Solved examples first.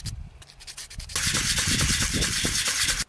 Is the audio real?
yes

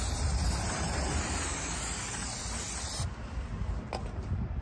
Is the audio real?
yes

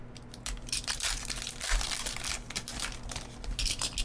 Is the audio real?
yes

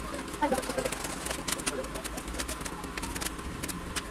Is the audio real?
yes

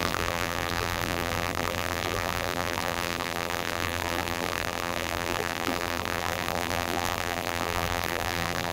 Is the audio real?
no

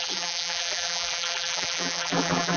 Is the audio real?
no